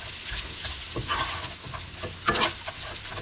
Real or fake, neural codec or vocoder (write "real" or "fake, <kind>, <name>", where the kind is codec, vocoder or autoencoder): real